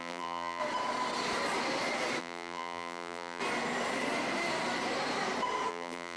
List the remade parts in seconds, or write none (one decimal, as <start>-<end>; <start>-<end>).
0.0-0.6; 2.2-3.4; 5.7-6.2